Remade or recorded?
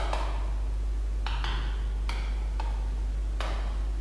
recorded